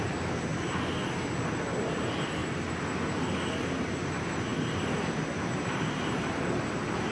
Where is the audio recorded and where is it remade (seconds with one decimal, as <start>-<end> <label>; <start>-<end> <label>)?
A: 0.0-4.5 recorded; 4.5-7.1 remade